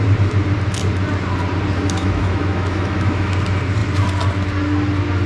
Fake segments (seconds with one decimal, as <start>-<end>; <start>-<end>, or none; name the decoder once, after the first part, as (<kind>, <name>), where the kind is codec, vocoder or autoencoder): 2.0-3.3 (autoencoder, DAC-VAE)